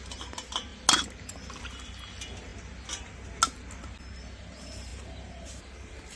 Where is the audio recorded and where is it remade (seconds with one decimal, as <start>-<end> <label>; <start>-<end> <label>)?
0.0-6.2 recorded